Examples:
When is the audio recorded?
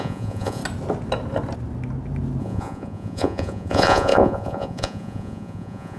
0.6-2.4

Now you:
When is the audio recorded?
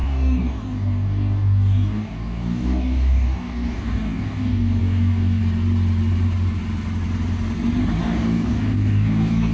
5.4-8.0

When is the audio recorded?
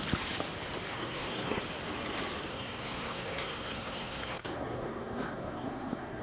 0.0-0.9; 1.6-2.5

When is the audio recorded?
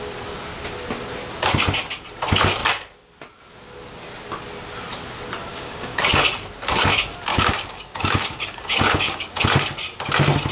0.0-5.5; 6.0-7.3; 9.4-10.5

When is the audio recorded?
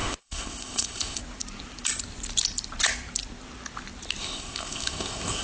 1.2-4.2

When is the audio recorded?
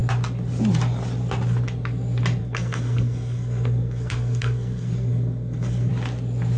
0.0-2.4; 5.9-6.6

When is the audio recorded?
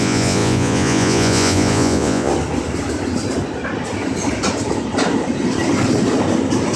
2.3-6.8